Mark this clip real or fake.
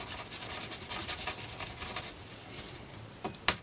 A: real